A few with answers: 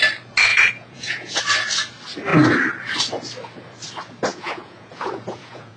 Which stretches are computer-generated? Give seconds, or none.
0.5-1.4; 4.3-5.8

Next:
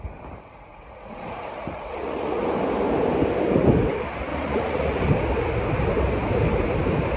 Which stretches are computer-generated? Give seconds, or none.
0.7-2.4; 4.3-5.1